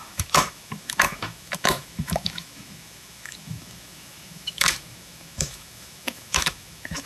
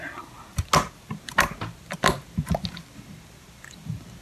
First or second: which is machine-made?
first